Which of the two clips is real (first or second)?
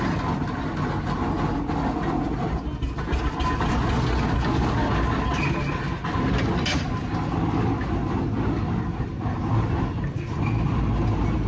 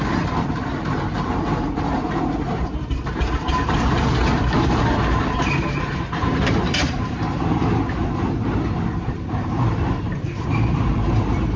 first